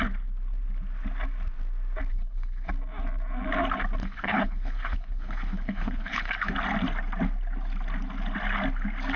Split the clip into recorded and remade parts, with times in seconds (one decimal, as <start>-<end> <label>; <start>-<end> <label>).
0.0-2.1 recorded; 2.1-2.7 remade; 2.7-4.0 recorded; 4.0-6.5 remade; 6.5-9.2 recorded